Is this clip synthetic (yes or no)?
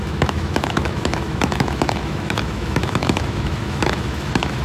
yes